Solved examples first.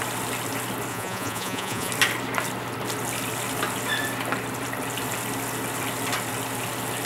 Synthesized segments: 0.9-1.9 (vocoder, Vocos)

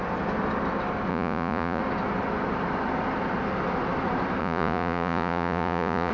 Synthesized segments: 1.1-1.8 (vocoder, Vocos); 4.4-6.1